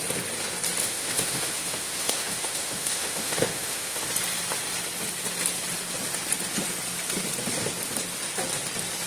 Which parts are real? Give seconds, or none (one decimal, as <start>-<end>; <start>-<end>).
0.0-0.8; 4.1-9.1